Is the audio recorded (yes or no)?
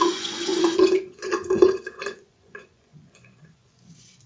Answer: no